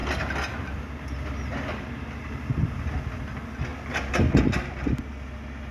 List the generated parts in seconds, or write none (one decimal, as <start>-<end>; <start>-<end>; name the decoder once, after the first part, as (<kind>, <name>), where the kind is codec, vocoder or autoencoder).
none